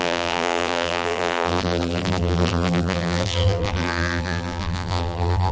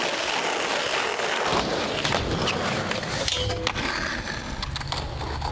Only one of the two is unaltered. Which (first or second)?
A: second